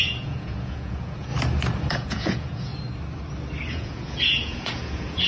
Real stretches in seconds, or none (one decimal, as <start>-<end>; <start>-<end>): 1.3-1.9; 2.7-3.7

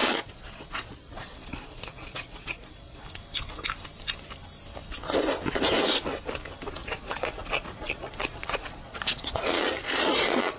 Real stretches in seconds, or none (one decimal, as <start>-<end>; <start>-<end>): 3.0-6.8

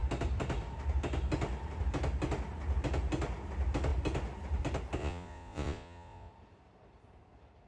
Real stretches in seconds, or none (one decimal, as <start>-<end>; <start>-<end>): 0.0-5.0; 6.3-7.7

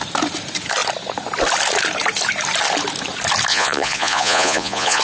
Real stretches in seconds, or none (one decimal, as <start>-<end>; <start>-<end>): 0.0-3.5

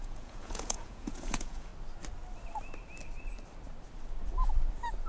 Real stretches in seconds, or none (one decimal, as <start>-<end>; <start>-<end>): 1.7-5.1